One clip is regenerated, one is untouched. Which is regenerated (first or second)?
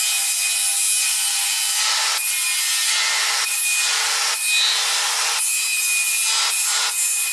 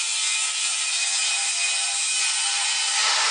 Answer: second